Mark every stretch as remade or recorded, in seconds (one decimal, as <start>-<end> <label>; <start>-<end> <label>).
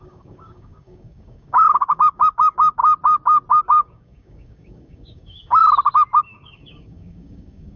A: 0.0-2.8 remade; 2.8-3.6 recorded; 3.6-5.6 remade; 5.6-6.2 recorded; 6.2-7.8 remade